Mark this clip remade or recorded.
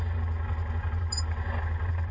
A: recorded